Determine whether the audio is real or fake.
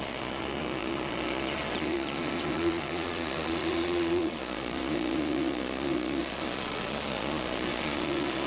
fake